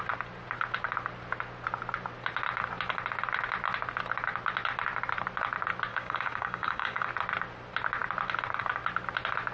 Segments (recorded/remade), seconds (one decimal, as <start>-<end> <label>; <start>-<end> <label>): 0.0-5.9 recorded; 5.9-7.1 remade; 7.1-9.5 recorded